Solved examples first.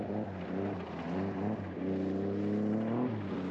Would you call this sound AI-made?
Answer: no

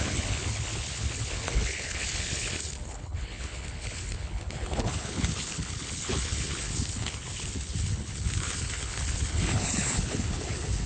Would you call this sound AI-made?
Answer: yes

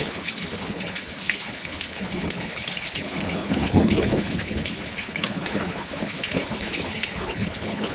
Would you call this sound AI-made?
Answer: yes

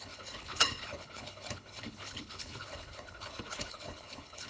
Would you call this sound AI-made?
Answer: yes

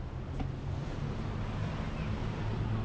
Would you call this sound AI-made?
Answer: no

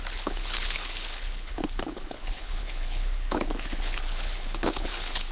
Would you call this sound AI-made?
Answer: yes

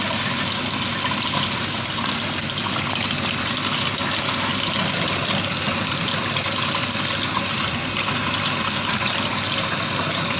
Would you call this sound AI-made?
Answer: no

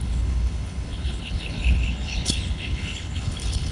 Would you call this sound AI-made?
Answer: yes